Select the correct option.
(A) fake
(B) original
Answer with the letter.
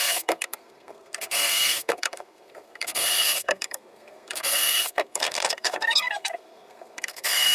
A